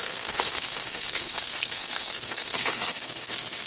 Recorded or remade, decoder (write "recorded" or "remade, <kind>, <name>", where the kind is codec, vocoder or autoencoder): remade, codec, SNAC